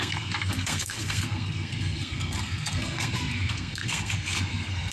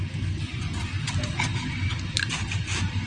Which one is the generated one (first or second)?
first